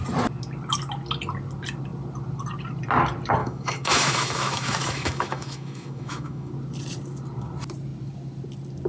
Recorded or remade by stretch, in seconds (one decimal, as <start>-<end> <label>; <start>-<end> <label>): 0.0-3.4 recorded; 3.4-6.5 remade; 6.5-8.9 recorded